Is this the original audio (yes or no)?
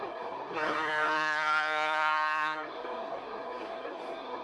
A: no